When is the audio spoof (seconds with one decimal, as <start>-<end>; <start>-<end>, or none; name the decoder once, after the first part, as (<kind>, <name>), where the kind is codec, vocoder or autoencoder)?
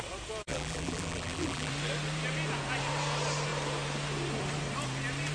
0.5-1.7 (vocoder, BigVGAN v2)